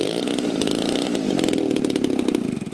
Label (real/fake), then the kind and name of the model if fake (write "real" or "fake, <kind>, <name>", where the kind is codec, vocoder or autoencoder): real